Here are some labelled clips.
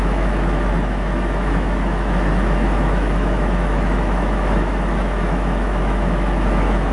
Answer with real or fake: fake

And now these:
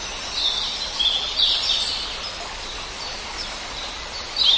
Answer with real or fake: real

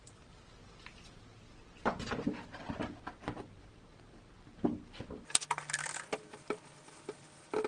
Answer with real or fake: real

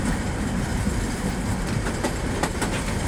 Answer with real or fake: fake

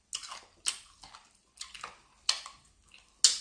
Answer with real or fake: real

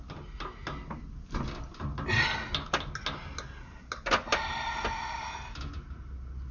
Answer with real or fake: real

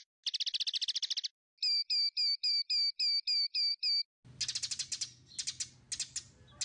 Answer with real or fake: real